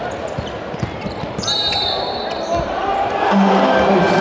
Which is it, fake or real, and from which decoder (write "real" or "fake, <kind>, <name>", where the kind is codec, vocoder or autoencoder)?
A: real